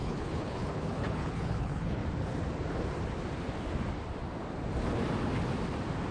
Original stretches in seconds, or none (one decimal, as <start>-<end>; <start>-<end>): 2.0-6.1